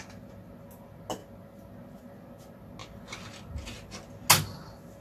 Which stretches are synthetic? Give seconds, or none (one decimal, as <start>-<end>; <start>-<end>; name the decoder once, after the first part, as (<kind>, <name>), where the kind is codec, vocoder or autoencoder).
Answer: none